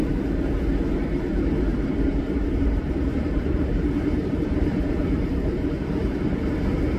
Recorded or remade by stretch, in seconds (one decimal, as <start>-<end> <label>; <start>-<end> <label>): 0.0-1.7 recorded; 1.7-5.7 remade; 5.7-7.0 recorded